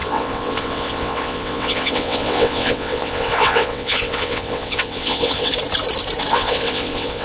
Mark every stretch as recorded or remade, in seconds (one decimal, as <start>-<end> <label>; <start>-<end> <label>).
0.0-5.5 remade; 5.5-6.3 recorded; 6.3-7.2 remade